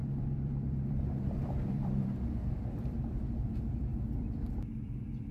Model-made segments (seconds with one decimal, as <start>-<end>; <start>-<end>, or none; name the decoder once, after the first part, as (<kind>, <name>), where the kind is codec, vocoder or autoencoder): 0.0-5.3 (vocoder, BigVGAN v2)